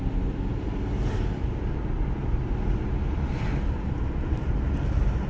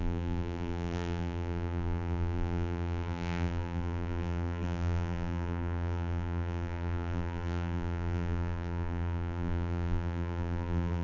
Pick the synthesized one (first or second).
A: second